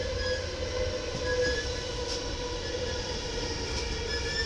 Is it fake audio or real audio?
real